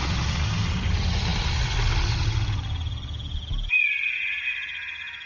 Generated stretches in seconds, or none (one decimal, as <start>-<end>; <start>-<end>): none